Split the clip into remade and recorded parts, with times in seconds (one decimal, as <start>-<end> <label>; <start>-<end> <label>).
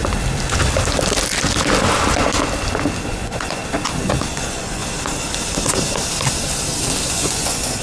0.0-3.1 recorded; 3.1-3.6 remade; 3.6-4.3 recorded; 4.3-4.8 remade; 4.8-7.1 recorded; 7.1-7.8 remade